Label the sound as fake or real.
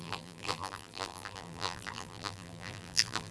fake